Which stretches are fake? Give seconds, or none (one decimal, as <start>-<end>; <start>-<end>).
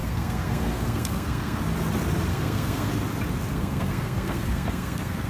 0.0-1.6; 2.3-2.9; 3.5-5.3